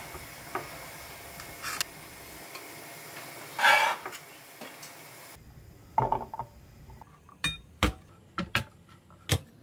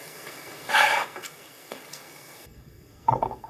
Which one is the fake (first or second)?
second